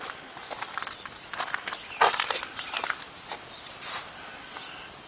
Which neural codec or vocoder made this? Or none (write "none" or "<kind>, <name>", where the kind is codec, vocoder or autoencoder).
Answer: none